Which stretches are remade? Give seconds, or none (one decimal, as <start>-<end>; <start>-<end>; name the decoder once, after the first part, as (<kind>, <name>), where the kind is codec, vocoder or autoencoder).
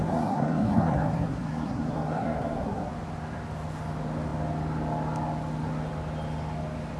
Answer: 0.0-2.9 (codec, SNAC)